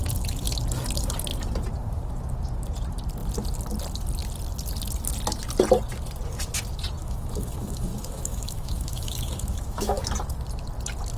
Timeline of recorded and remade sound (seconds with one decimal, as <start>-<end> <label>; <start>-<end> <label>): 0.0-7.0 recorded; 7.0-10.1 remade; 10.1-11.2 recorded